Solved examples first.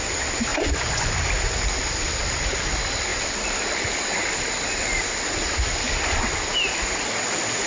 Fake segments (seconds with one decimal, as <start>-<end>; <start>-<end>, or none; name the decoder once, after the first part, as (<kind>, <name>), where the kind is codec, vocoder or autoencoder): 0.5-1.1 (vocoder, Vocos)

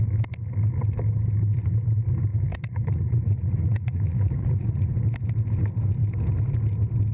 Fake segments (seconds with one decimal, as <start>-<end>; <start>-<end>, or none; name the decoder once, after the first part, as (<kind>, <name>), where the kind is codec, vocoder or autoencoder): 2.3-4.9 (vocoder, Vocos)

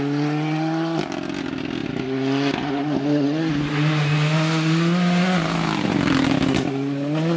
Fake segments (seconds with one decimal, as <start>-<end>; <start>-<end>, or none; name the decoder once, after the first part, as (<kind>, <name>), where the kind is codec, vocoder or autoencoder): none

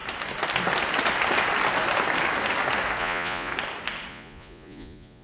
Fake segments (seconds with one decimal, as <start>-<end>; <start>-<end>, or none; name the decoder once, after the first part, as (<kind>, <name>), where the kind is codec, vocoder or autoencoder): 3.0-3.5 (vocoder, Vocos); 4.1-5.2

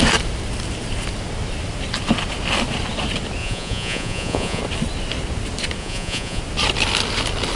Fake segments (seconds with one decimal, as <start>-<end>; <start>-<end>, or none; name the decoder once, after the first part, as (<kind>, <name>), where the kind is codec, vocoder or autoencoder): 3.4-4.6 (vocoder, Vocos); 5.8-6.4

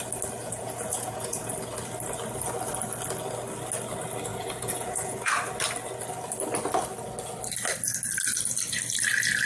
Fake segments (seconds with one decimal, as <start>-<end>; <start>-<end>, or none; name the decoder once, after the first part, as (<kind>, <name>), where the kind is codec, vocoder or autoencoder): 0.4-1.5 (vocoder, Vocos); 4.3-5.3

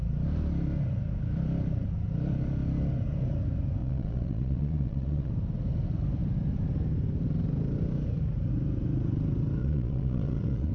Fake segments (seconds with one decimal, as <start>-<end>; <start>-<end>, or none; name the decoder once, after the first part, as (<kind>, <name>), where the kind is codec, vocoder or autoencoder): 3.8-5.3 (vocoder, Vocos); 9.6-10.7